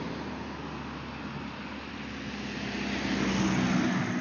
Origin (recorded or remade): recorded